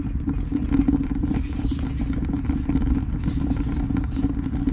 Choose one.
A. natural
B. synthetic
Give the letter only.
A